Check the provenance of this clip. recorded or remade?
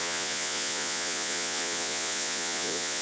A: remade